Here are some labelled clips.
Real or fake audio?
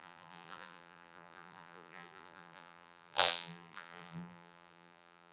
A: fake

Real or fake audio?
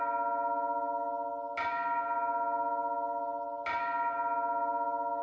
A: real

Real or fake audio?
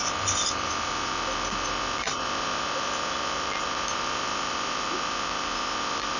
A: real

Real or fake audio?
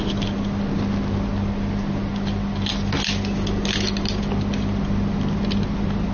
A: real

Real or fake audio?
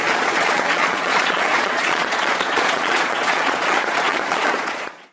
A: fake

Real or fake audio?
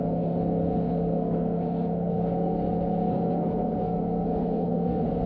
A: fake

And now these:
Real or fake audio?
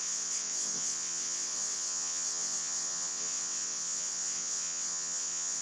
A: fake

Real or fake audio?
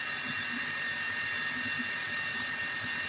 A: real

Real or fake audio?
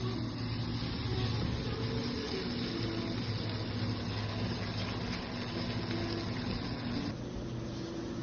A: real